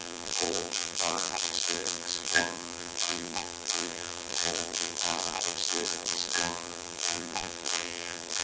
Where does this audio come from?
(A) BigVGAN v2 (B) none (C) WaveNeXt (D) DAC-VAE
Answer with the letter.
A